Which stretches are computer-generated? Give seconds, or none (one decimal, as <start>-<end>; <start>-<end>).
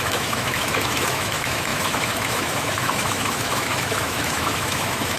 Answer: 0.0-5.2